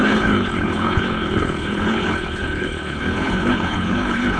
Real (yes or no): no